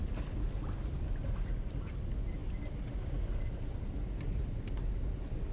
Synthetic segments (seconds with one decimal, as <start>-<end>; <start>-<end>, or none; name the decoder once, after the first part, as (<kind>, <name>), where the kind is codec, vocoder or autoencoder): none